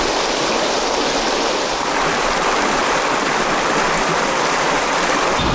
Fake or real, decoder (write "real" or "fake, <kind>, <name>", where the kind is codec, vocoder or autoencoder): fake, vocoder, BigVGAN v2